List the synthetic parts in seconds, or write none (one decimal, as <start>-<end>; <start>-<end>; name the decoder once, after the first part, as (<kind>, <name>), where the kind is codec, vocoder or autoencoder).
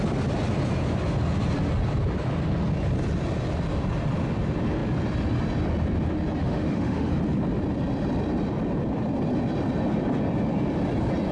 6.4-7.1 (autoencoder, DAC-VAE)